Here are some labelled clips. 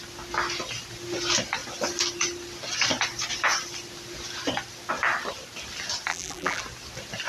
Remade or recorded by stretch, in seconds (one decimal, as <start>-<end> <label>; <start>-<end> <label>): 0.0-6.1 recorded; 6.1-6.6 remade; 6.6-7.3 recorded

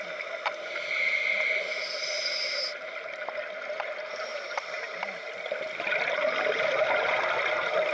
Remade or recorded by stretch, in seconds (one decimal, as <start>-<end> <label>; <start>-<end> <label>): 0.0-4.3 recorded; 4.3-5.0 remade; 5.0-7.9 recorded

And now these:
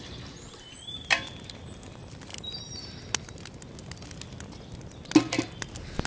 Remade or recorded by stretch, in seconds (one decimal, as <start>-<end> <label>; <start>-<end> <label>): 0.0-6.1 recorded